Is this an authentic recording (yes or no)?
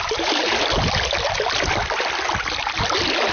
yes